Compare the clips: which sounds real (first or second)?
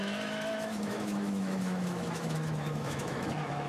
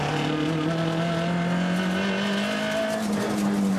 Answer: second